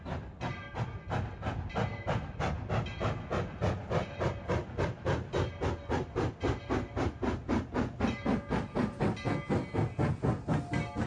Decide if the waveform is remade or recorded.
recorded